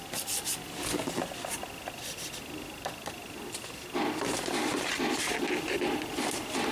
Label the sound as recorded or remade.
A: recorded